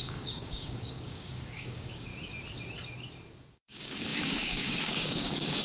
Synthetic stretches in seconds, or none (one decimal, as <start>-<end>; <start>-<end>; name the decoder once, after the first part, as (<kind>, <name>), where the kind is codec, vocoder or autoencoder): 0.0-2.1 (codec, DAC); 3.5-5.6

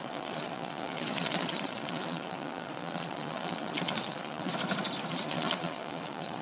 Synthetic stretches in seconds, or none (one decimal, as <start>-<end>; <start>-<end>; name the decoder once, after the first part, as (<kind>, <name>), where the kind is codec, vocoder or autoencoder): 0.0-4.5 (vocoder, Vocos); 5.1-6.4

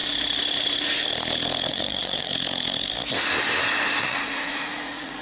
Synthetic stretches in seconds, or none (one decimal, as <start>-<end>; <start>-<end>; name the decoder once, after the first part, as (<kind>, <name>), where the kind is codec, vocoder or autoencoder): 1.7-2.3 (vocoder, Vocos); 4.0-5.2

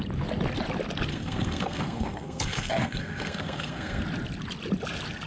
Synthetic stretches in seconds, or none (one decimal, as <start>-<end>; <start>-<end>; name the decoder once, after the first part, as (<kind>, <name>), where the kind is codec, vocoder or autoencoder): 1.1-4.0 (codec, SNAC)

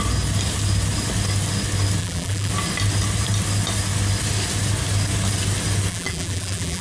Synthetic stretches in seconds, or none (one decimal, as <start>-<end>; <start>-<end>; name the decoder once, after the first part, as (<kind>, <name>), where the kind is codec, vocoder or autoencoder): 2.0-2.5 (vocoder, BigVGAN v2); 5.9-6.8

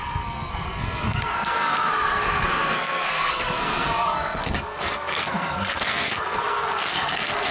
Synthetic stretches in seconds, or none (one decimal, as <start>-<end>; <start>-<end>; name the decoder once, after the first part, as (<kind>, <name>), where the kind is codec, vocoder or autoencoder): 0.0-7.5 (codec, SNAC)

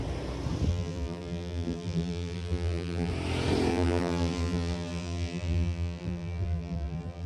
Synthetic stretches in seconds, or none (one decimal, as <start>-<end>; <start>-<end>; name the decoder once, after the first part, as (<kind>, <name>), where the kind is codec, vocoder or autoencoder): 0.7-3.1 (vocoder, BigVGAN v2); 3.7-7.3